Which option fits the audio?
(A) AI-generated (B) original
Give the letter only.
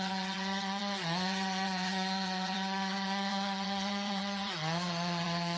A